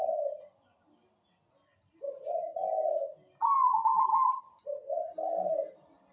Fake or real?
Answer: real